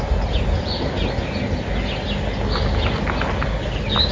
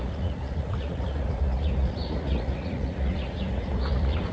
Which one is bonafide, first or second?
first